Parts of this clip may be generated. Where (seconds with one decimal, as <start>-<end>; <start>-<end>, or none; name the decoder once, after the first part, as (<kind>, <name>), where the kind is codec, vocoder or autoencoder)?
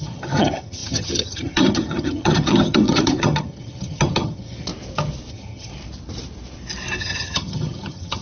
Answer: 0.0-4.7 (vocoder, HiFi-GAN); 5.3-5.7; 7.0-8.2